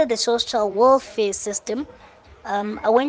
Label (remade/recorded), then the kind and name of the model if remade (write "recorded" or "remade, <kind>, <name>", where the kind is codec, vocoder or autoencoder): remade, vocoder, Vocos